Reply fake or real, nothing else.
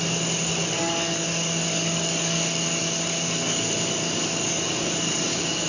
fake